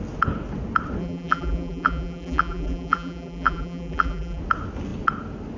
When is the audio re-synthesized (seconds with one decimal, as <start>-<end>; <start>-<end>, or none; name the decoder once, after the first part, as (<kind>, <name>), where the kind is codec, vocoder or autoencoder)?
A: 1.0-4.4 (vocoder, BigVGAN v2)